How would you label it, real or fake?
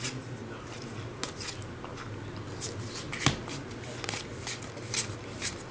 real